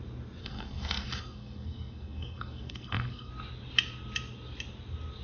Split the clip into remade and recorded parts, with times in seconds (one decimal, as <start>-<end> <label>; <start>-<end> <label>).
0.0-0.4 recorded; 0.4-3.3 remade; 3.3-5.2 recorded